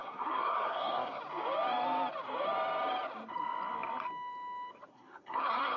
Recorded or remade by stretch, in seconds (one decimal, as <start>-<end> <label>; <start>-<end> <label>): 0.0-1.2 remade; 1.2-4.9 recorded; 4.9-5.8 remade